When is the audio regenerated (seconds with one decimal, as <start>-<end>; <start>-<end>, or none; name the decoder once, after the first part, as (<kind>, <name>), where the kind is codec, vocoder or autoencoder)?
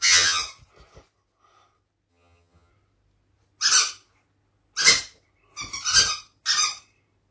0.0-0.4 (vocoder, HiFi-GAN); 2.1-2.7